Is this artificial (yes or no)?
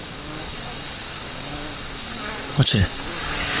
yes